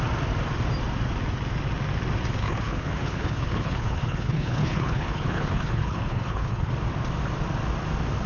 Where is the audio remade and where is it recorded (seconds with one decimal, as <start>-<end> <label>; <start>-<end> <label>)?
0.0-2.4 recorded; 2.4-6.7 remade; 6.7-8.3 recorded